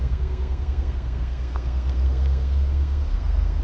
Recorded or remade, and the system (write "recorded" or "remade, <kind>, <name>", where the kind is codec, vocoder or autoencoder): remade, codec, SNAC